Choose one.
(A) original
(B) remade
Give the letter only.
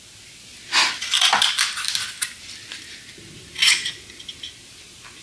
A